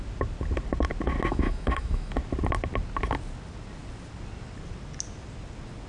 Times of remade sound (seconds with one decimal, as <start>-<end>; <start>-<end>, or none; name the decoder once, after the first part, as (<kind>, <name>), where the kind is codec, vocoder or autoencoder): 1.3-2.1 (autoencoder, DAC-VAE)